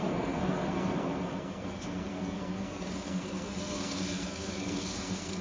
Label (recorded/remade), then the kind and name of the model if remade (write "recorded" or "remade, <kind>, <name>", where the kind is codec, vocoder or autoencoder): remade, codec, SNAC